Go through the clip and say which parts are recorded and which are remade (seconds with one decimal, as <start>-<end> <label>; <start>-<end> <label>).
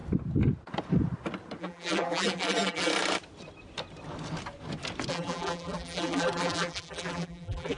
0.0-1.6 recorded; 1.6-2.9 remade; 2.9-5.1 recorded; 5.1-7.8 remade